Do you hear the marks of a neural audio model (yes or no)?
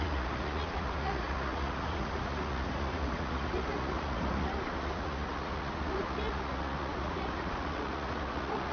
yes